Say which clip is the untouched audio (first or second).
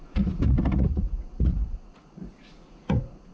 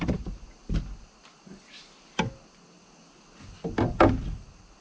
second